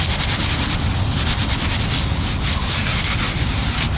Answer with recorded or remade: recorded